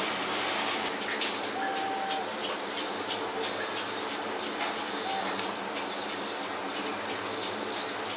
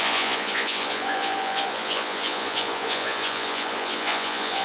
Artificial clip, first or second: second